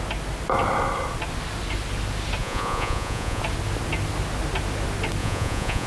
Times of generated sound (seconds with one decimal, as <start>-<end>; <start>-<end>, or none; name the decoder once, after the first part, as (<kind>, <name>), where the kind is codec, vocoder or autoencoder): 2.4-3.4 (vocoder, Vocos); 5.2-5.9

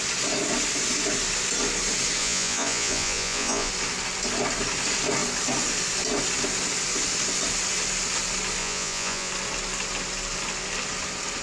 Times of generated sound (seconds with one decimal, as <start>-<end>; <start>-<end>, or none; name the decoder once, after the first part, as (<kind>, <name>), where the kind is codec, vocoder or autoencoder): 2.2-3.7 (vocoder, Vocos); 8.6-9.3